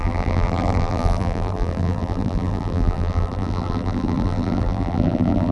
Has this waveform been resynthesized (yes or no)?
yes